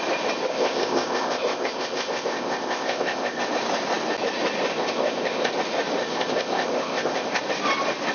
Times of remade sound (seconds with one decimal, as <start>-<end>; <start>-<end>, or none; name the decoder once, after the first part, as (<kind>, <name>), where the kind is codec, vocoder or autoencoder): 0.5-3.4 (codec, ZipCodec); 4.7-5.5; 6.0-7.4